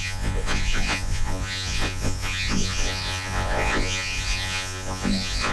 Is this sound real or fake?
fake